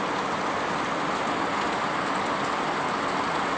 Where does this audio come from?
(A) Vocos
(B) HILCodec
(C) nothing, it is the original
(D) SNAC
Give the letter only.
C